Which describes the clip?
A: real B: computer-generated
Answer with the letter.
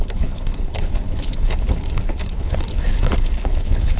B